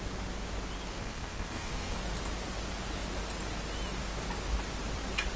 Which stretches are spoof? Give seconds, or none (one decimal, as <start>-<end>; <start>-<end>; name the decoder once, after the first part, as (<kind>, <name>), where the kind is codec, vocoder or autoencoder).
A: 0.9-2.0 (codec, SNAC)

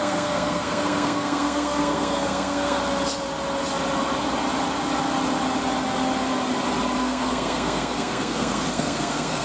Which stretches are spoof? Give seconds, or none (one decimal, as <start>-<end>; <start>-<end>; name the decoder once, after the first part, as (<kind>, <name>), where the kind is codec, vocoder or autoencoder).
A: 0.0-2.8 (codec, SNAC); 7.0-9.4

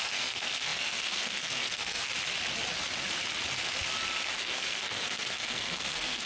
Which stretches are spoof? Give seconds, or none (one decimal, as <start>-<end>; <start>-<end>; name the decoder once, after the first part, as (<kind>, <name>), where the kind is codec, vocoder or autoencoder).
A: 0.0-2.1 (codec, SNAC); 4.4-6.3

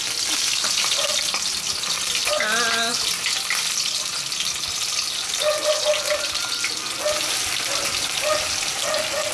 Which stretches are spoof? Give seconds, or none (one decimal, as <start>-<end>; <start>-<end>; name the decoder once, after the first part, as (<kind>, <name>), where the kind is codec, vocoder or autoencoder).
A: none

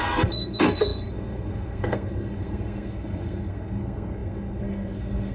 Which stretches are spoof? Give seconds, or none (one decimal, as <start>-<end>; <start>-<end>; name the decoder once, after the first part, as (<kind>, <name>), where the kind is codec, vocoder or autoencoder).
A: 0.0-5.3 (codec, SNAC)

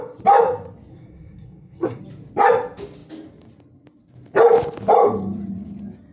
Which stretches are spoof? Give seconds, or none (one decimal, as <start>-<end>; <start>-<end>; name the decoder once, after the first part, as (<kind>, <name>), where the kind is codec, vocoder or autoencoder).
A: 0.9-2.0 (codec, SNAC)

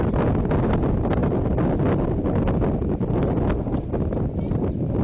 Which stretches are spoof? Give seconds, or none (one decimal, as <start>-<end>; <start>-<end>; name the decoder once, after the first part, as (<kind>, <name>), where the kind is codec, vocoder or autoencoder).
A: none